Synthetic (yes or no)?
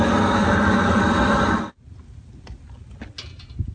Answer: no